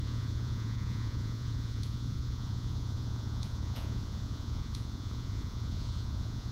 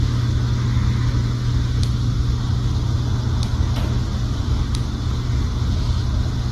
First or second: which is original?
second